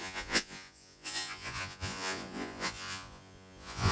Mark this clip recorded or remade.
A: remade